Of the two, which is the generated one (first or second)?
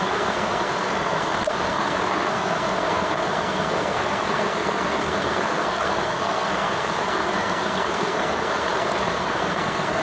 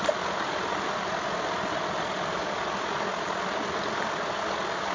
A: first